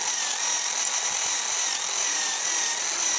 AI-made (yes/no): no